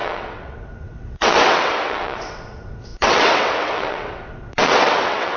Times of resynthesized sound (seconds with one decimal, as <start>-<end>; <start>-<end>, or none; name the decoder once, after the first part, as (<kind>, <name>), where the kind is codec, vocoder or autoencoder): 0.0-5.4 (vocoder, WaveNeXt)